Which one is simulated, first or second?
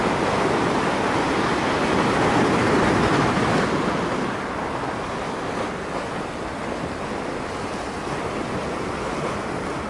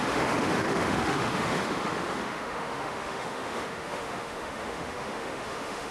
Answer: second